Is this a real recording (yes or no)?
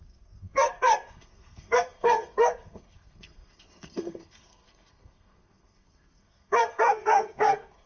no